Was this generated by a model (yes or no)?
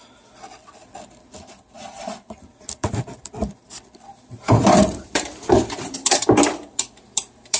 yes